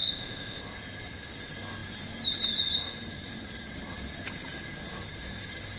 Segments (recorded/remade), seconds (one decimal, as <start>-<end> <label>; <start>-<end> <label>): 0.0-0.6 remade; 0.6-5.8 recorded